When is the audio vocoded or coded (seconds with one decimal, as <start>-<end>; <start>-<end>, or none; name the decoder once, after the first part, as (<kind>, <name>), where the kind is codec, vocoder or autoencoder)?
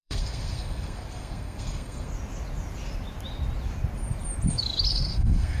0.0-2.1 (codec, SNAC); 4.9-5.6